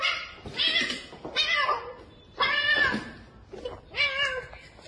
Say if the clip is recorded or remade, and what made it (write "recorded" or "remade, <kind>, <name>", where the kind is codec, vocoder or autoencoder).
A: recorded